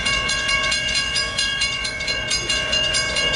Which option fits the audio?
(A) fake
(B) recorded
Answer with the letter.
A